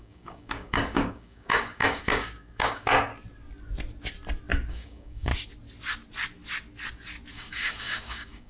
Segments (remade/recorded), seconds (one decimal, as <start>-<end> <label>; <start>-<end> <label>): 0.0-3.1 remade; 3.1-4.7 recorded; 4.7-5.3 remade; 5.3-7.3 recorded; 7.3-8.5 remade